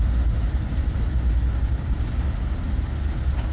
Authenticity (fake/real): real